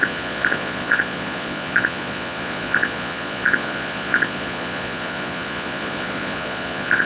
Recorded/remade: remade